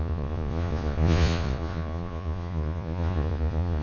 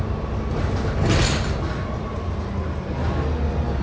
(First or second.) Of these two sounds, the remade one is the first